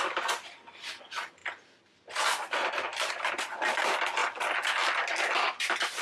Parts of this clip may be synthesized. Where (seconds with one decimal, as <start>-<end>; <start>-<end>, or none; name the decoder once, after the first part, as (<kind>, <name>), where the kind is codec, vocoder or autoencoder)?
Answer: none